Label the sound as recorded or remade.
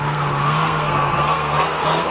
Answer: remade